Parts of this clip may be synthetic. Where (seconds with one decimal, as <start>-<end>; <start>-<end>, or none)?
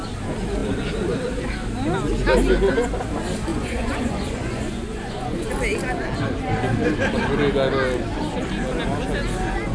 3.5-5.5